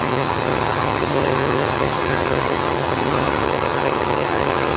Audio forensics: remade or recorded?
remade